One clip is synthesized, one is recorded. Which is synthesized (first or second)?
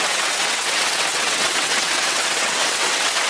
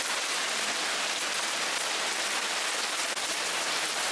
first